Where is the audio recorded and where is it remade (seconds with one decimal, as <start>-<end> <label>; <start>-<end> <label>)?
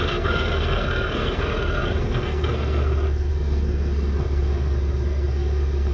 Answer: 0.0-5.9 remade